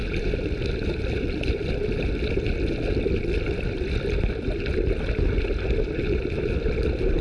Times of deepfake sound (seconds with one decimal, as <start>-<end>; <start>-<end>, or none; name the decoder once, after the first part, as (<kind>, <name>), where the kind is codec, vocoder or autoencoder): none